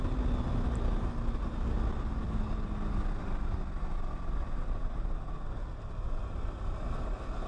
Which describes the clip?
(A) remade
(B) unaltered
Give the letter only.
B